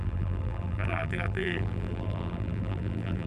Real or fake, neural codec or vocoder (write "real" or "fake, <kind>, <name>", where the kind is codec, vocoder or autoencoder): fake, vocoder, BigVGAN v2